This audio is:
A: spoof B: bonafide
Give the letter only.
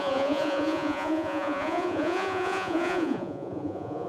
A